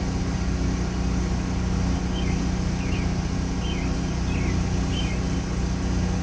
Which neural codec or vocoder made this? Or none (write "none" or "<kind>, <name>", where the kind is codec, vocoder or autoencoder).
none